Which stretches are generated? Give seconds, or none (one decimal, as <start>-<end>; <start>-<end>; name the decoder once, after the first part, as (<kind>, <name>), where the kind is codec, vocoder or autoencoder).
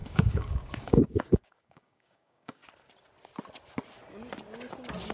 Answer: 0.0-2.6 (codec, DAC)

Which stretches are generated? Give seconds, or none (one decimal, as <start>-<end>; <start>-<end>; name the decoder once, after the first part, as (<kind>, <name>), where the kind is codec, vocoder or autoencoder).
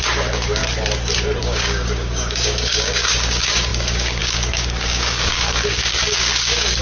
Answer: 0.0-0.6 (codec, DAC); 1.4-6.8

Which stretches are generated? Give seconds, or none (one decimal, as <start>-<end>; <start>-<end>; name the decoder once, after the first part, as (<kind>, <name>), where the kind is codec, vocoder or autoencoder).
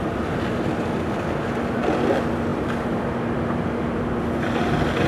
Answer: none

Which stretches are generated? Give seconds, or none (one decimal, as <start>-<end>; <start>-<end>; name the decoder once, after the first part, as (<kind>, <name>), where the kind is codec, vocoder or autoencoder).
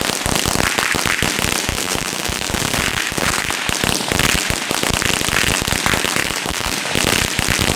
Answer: 1.7-3.5 (codec, DAC); 6.2-6.9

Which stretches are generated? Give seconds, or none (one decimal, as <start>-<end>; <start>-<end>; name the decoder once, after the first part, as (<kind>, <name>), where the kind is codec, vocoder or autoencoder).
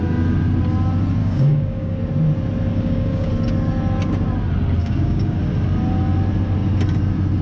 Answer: 1.2-2.0 (codec, DAC); 2.7-3.3; 4.8-5.4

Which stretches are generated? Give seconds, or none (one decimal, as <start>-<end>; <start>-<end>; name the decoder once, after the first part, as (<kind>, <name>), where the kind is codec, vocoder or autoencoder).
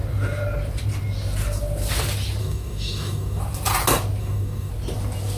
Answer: 2.4-3.4 (codec, DAC); 4.2-4.7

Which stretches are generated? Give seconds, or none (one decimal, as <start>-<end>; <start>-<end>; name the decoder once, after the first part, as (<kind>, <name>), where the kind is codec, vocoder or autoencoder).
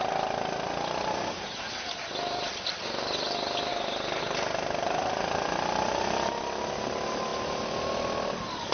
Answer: none